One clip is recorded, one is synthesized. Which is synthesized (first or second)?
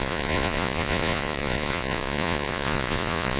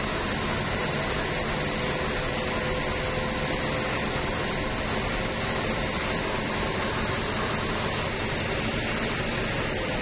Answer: first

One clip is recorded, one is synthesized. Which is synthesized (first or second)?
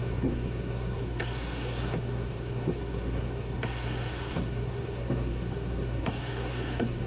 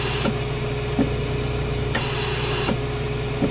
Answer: first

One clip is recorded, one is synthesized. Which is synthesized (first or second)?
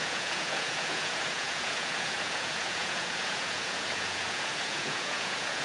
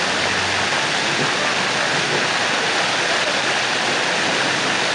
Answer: first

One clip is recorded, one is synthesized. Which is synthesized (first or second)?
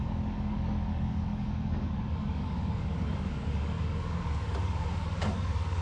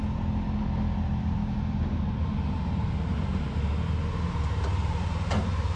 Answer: first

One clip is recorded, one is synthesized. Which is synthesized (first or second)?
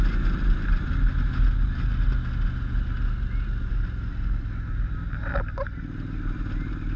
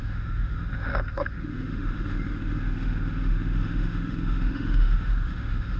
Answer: second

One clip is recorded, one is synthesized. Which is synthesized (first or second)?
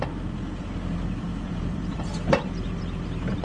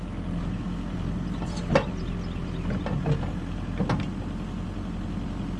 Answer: first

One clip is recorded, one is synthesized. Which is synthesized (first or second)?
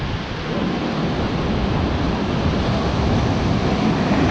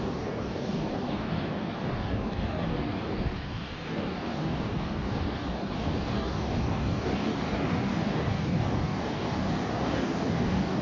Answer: second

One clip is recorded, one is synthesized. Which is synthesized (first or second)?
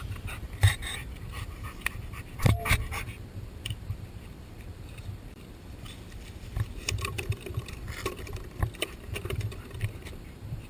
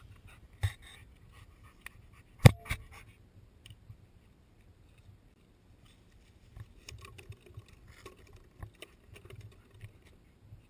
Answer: first